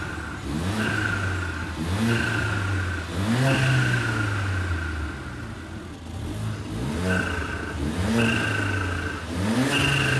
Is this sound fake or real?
real